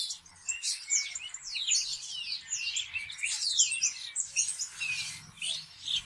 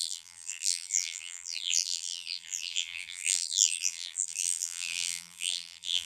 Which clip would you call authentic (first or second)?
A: first